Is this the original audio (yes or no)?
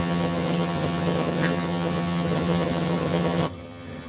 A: no